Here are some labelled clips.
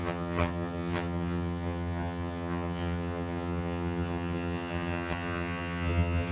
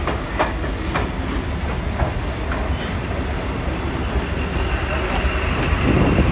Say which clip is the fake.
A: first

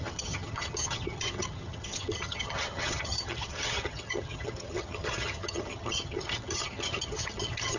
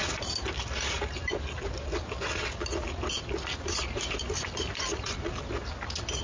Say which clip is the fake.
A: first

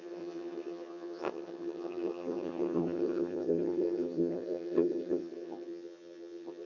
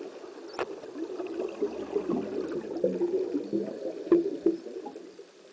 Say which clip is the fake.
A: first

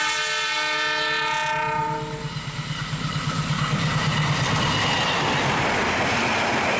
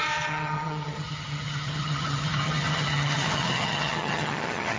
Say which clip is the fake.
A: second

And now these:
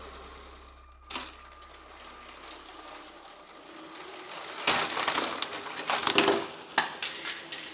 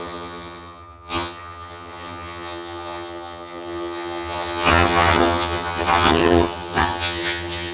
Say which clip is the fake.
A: second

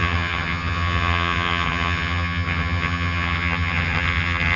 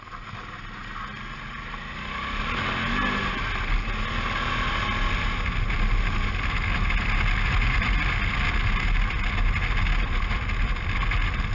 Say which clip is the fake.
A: first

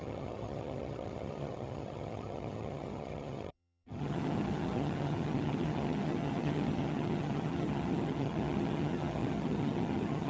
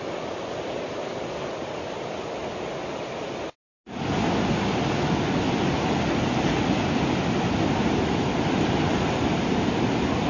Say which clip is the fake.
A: first